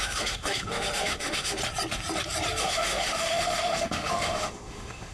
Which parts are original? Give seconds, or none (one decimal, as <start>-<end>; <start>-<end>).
1.6-2.6